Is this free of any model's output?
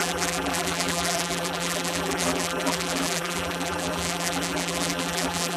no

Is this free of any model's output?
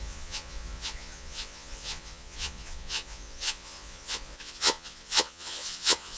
no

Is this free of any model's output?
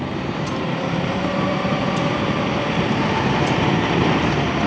no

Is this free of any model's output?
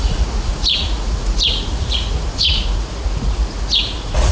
no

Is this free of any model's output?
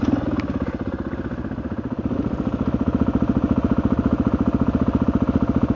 yes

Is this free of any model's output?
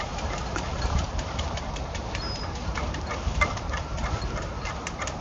no